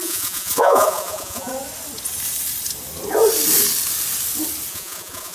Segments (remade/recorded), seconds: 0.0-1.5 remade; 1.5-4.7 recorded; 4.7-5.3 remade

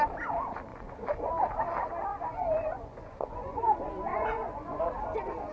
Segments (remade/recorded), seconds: 0.0-0.7 recorded; 0.7-1.3 remade; 1.3-2.1 recorded; 2.1-3.6 remade; 3.6-4.1 recorded; 4.1-4.8 remade; 4.8-5.5 recorded

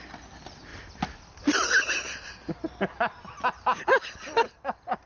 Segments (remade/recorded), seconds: 0.0-5.1 recorded

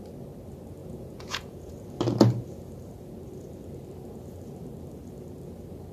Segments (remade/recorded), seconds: 0.0-0.8 recorded; 0.8-1.7 remade; 1.7-5.9 recorded

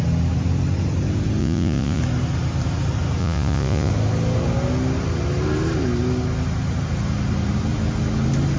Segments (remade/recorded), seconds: 0.0-1.4 recorded; 1.4-2.0 remade; 2.0-3.2 recorded; 3.2-3.9 remade; 3.9-8.6 recorded

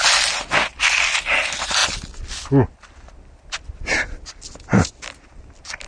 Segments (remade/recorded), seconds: 0.0-5.9 recorded

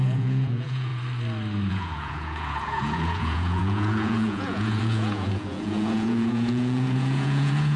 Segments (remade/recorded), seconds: 0.0-0.9 remade; 0.9-1.7 recorded; 1.7-7.8 remade

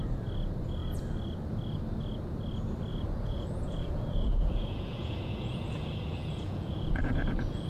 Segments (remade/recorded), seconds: 0.0-2.9 recorded; 2.9-7.7 remade